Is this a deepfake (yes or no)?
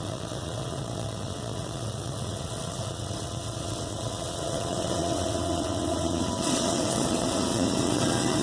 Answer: yes